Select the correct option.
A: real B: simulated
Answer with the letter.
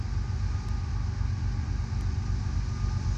A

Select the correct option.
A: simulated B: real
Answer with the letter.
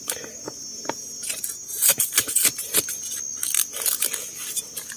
B